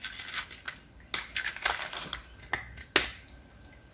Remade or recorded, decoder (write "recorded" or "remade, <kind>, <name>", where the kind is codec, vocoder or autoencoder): recorded